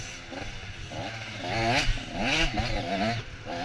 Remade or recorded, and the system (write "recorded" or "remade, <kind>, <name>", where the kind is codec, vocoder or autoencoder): recorded